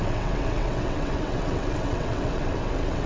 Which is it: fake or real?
fake